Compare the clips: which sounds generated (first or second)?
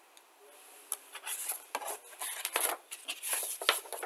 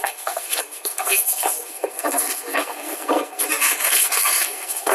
second